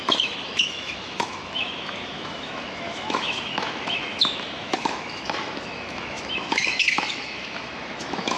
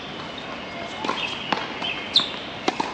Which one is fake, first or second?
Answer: first